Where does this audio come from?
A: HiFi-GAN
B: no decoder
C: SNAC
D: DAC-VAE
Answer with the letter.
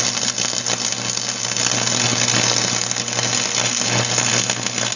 B